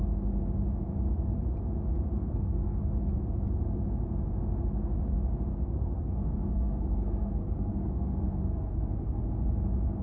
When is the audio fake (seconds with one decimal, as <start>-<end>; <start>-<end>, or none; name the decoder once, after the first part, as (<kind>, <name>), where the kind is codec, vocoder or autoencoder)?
2.2-2.8 (codec, SNAC); 5.5-9.3